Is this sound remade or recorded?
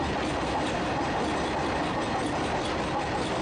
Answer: recorded